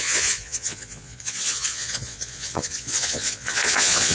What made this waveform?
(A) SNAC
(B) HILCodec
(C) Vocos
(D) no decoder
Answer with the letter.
C